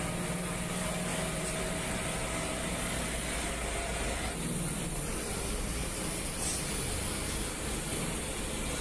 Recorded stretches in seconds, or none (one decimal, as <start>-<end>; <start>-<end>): 0.0-8.8